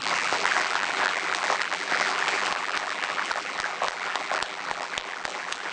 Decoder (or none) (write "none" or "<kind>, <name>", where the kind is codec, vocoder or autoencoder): vocoder, BigVGAN v2